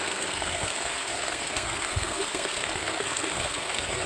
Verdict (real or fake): fake